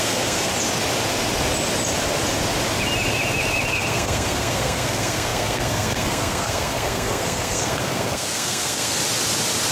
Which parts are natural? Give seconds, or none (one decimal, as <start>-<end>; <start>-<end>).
0.5-3.7; 9.0-9.7